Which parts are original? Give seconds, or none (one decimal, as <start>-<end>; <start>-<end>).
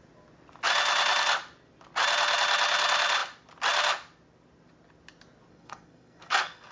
0.0-5.5